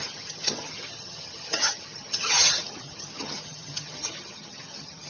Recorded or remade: remade